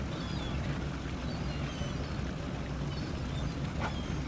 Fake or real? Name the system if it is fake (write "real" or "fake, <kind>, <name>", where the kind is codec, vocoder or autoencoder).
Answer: real